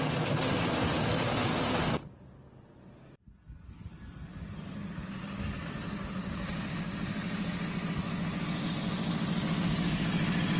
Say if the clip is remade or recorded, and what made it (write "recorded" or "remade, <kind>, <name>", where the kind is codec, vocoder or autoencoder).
recorded